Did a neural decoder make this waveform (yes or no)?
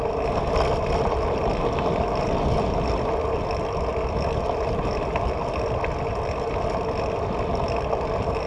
no